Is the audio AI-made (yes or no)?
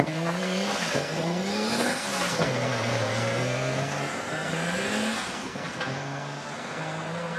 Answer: yes